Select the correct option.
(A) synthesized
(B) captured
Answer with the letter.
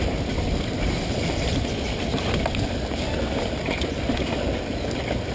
B